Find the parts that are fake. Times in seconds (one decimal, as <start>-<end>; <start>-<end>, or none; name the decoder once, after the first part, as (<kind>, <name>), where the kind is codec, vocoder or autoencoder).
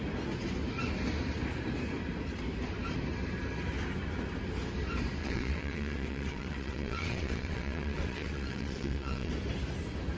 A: 5.2-9.3 (vocoder, WaveNeXt)